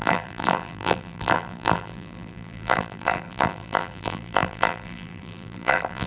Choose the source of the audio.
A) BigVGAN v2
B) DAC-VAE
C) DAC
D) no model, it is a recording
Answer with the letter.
A